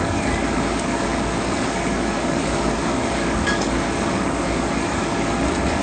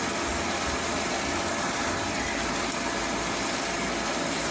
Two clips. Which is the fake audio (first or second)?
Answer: first